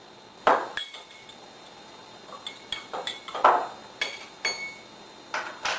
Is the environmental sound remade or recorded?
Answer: recorded